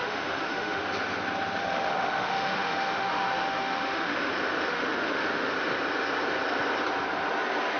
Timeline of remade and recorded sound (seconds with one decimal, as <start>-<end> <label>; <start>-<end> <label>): 0.0-0.8 remade; 0.8-1.6 recorded; 1.6-4.3 remade; 4.3-4.7 recorded; 4.7-5.5 remade; 5.5-7.8 recorded